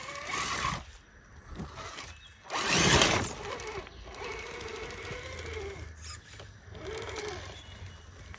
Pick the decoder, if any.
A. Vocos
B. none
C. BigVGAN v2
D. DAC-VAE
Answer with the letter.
B